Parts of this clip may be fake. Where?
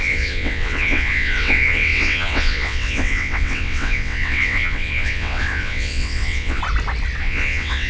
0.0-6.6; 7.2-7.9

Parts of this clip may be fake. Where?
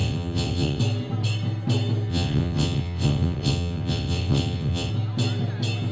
0.0-0.8; 2.1-4.9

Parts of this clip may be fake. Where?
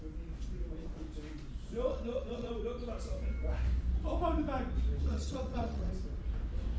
1.9-2.5; 5.0-5.9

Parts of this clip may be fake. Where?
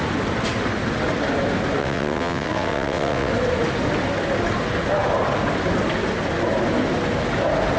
1.8-3.3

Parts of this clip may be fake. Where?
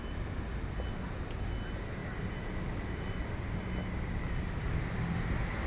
none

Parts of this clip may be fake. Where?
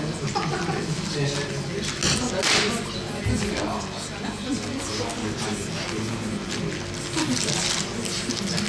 none